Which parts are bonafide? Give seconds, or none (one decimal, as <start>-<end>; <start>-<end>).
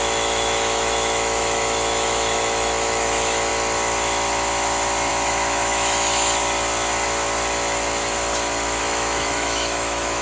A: 3.5-5.1; 6.4-8.8